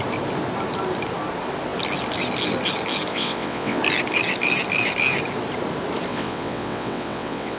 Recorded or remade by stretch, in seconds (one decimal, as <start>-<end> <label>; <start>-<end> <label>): 0.0-3.1 recorded; 3.1-3.8 remade; 3.8-6.1 recorded; 6.1-7.6 remade